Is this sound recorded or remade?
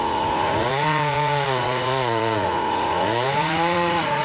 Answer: remade